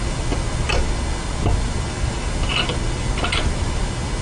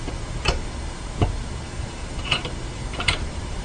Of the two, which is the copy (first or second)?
second